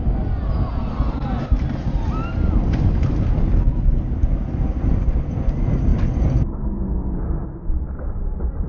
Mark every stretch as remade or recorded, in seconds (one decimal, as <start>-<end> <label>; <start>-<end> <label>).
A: 0.0-7.4 recorded; 7.4-8.7 remade